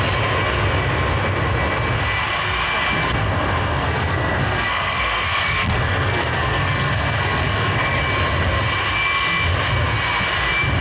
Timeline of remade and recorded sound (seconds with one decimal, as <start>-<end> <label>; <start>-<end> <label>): 0.0-3.0 recorded; 3.0-8.0 remade; 8.0-10.8 recorded